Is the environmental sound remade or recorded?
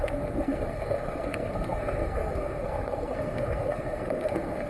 remade